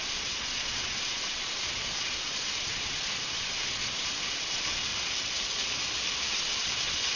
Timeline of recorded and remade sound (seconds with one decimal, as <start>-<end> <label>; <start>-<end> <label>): 0.0-4.9 remade; 4.9-6.3 recorded; 6.3-7.2 remade